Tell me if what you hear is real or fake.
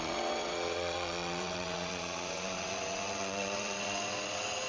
fake